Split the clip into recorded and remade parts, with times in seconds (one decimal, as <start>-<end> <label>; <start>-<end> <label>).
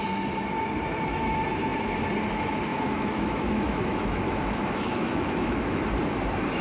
0.0-2.7 recorded; 2.7-5.9 remade; 5.9-6.6 recorded